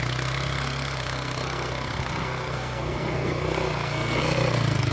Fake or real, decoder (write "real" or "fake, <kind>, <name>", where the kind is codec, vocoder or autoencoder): fake, codec, SNAC